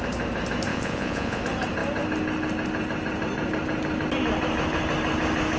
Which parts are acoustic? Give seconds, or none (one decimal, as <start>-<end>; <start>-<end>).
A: 0.0-0.7; 1.4-5.6